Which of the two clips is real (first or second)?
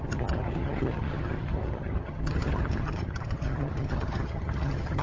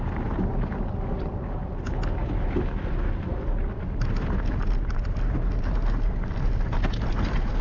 second